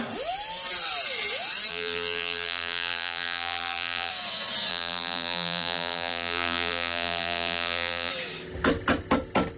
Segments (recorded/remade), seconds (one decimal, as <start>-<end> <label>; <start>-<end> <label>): 0.0-1.7 recorded; 1.7-4.1 remade; 4.1-4.7 recorded; 4.7-8.1 remade; 8.1-9.6 recorded